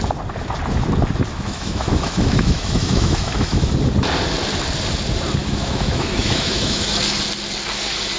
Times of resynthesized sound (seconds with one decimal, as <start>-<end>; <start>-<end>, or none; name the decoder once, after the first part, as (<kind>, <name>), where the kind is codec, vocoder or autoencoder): 1.3-3.7 (autoencoder, DAC-VAE); 5.4-7.0